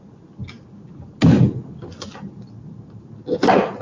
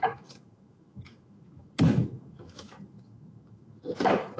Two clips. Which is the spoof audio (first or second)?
second